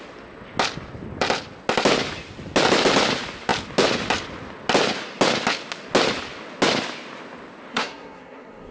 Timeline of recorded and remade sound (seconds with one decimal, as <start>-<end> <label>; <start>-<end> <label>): 0.0-7.7 recorded; 7.7-8.7 remade